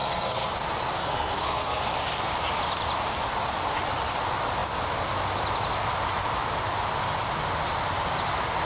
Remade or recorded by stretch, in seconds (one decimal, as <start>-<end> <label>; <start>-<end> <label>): 0.0-0.5 remade; 0.5-1.0 recorded; 1.0-1.8 remade; 1.8-8.7 recorded